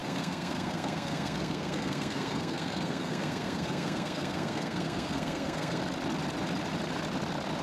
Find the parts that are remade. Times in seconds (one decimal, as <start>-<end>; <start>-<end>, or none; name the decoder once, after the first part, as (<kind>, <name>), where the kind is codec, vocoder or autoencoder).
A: 0.0-5.8 (codec, SNAC)

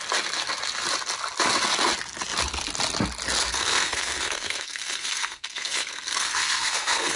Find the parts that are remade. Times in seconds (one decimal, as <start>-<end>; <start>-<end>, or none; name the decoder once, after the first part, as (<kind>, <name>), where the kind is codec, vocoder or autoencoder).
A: 3.4-7.2 (codec, SNAC)